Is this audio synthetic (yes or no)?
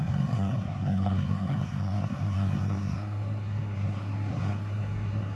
yes